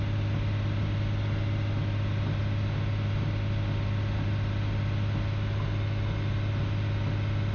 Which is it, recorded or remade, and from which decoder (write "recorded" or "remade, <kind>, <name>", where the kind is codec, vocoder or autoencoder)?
recorded